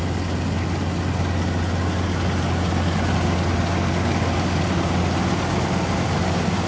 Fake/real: real